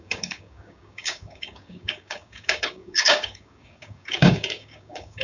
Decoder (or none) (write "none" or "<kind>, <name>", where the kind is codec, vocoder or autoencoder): codec, DAC